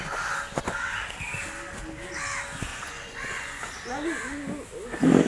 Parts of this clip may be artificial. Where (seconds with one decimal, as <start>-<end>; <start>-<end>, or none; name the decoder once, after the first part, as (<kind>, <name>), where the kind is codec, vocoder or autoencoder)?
2.7-3.6 (vocoder, Vocos)